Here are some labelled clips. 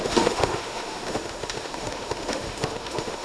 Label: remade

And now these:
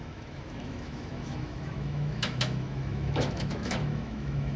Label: remade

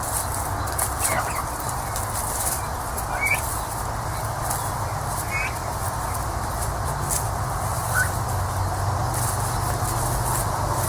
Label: recorded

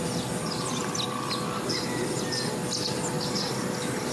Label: recorded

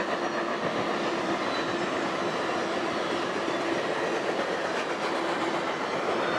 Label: recorded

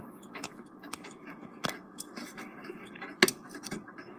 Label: remade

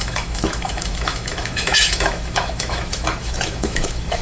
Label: remade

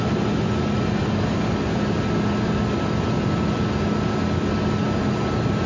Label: recorded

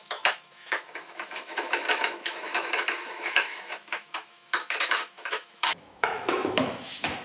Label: remade